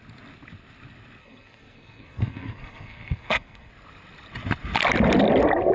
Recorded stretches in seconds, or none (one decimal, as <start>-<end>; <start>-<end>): 0.0-1.2; 3.7-5.7